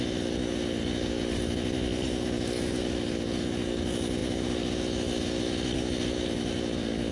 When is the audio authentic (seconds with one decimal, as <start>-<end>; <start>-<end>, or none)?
0.0-7.1